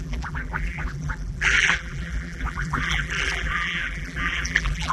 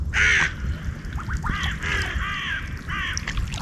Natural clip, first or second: second